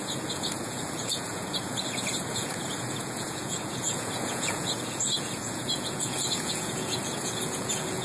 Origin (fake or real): fake